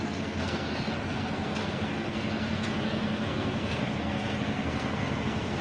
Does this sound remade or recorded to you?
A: remade